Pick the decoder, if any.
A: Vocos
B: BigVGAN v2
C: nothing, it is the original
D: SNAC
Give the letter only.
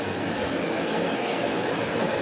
D